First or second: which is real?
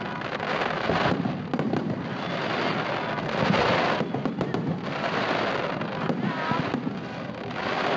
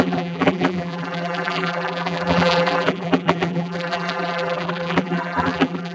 first